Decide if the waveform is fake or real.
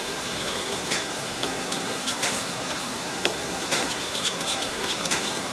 fake